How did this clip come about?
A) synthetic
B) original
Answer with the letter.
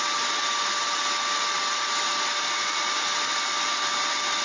B